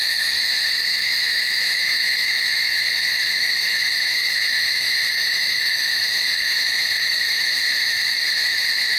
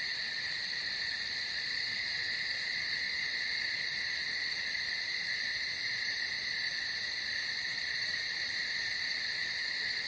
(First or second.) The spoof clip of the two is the first